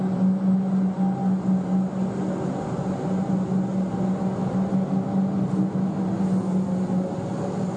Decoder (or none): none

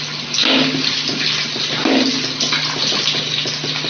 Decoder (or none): none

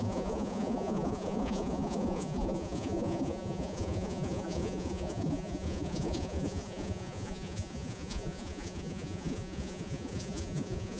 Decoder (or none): vocoder, Vocos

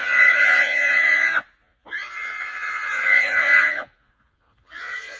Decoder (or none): vocoder, Vocos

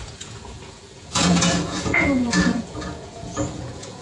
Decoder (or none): vocoder, Vocos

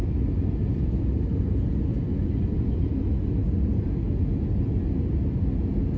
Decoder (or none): none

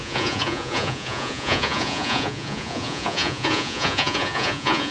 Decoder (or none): vocoder, Vocos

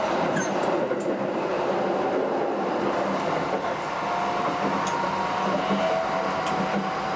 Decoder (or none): none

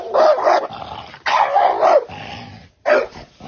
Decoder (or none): none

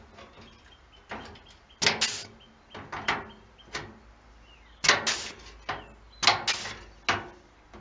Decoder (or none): none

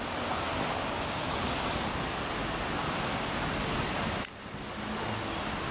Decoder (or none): none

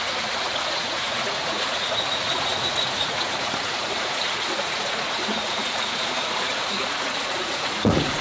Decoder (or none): vocoder, Vocos